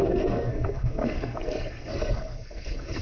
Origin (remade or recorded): remade